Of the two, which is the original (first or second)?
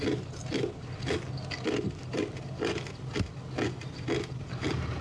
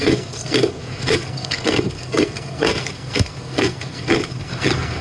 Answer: first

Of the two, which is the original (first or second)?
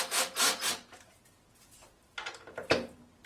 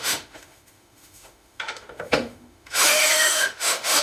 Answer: first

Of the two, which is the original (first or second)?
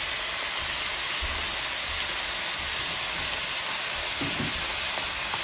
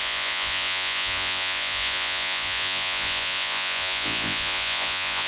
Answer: first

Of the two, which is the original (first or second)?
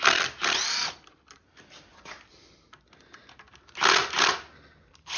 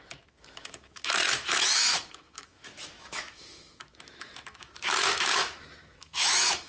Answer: first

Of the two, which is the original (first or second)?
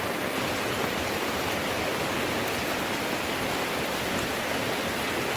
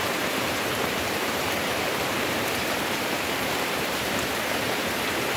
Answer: first